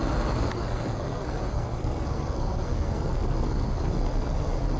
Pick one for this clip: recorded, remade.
remade